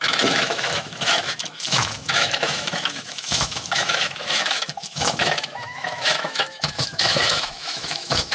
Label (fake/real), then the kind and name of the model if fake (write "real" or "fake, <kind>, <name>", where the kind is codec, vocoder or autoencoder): fake, autoencoder, DAC-VAE